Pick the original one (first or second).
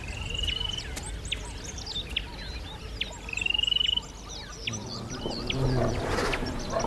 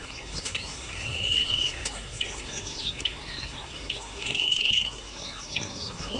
first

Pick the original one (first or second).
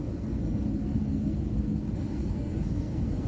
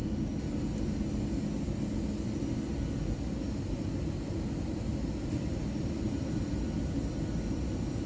second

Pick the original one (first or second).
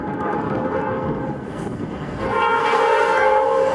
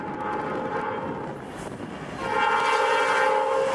second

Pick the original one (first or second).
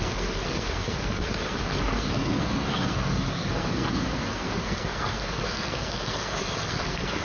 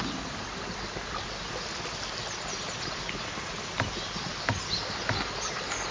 second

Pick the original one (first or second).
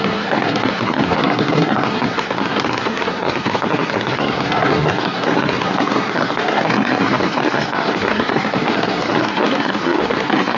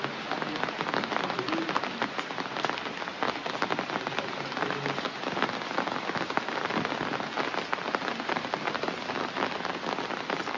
second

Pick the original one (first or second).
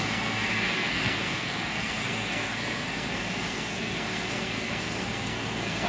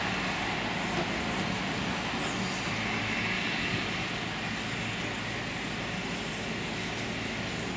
second